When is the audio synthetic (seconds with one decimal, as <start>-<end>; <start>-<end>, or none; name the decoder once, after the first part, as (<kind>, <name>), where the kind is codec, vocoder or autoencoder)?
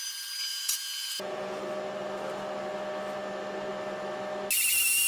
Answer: 0.5-1.6 (vocoder, Vocos)